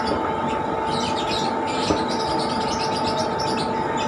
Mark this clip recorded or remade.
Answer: recorded